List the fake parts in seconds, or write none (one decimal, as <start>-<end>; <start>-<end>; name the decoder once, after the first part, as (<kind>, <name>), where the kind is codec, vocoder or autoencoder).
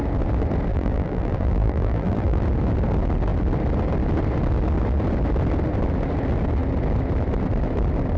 0.7-2.4 (vocoder, BigVGAN v2)